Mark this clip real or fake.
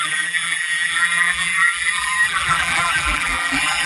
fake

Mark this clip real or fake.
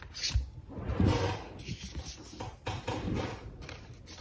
real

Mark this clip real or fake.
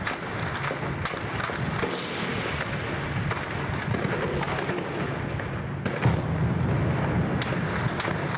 real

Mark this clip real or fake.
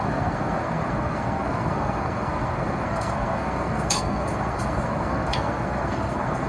fake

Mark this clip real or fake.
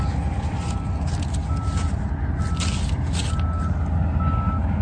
real